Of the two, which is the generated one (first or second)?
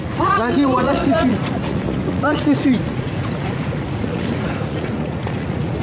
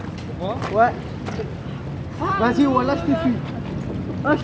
first